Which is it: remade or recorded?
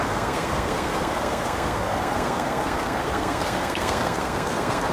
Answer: remade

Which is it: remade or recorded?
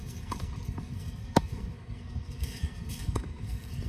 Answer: remade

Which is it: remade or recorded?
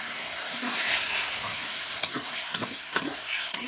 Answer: remade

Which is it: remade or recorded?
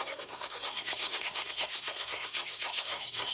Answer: remade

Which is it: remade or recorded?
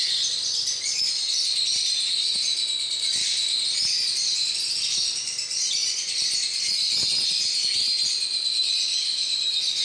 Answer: recorded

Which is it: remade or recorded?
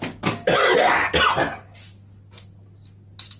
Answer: recorded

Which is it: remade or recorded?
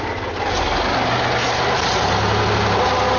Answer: recorded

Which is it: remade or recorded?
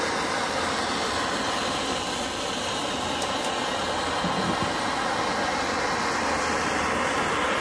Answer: recorded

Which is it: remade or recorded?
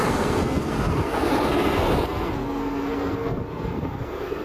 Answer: remade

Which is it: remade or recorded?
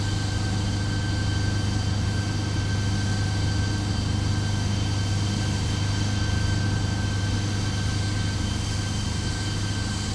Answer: recorded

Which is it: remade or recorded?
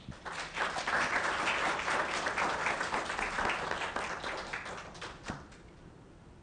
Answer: recorded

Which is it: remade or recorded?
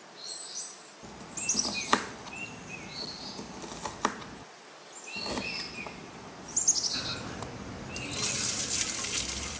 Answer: recorded